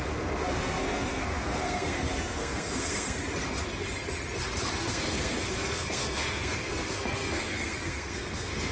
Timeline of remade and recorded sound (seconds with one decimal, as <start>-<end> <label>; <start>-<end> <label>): 0.0-3.2 remade; 3.2-4.8 recorded; 4.8-8.7 remade